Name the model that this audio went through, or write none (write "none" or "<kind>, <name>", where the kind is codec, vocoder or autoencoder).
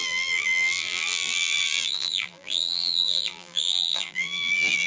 vocoder, BigVGAN v2